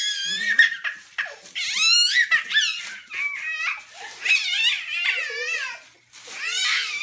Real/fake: real